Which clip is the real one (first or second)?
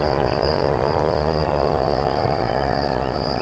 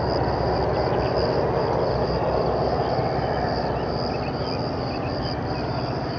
second